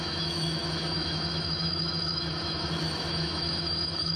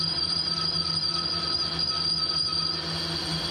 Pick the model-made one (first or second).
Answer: first